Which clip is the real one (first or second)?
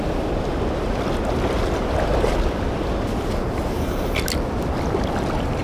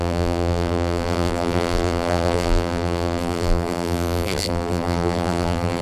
first